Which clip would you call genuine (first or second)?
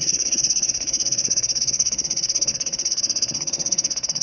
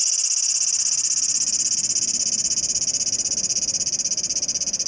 second